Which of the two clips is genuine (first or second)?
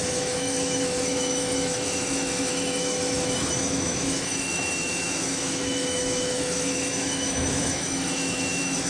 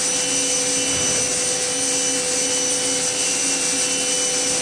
second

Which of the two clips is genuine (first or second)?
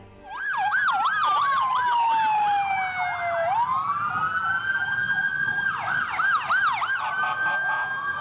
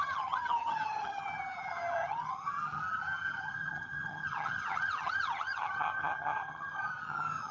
first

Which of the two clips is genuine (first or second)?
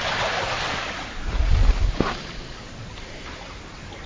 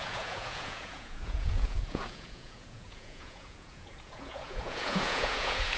first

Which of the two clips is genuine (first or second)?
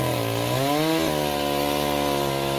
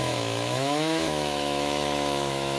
first